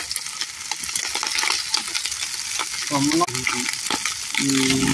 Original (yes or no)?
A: yes